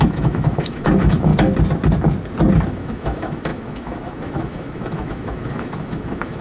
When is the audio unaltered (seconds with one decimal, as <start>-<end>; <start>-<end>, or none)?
1.3-2.7